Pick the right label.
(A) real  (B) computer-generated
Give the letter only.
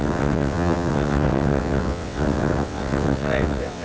B